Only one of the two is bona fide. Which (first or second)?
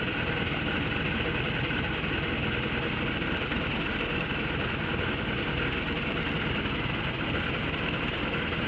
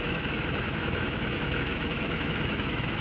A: first